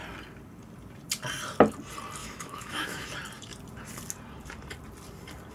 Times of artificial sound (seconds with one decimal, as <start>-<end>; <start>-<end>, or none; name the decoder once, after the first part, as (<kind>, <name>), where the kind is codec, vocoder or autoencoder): 2.2-3.1 (autoencoder, DAC-VAE)